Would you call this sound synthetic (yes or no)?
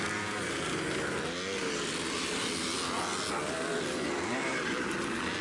no